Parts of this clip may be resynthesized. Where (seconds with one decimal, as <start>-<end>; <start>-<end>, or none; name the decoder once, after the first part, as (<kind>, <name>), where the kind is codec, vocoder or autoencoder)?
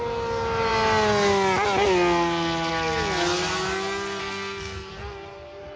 4.2-4.9 (codec, SNAC)